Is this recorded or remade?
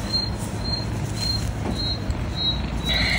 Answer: recorded